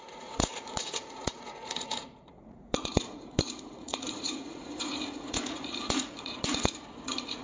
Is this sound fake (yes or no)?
yes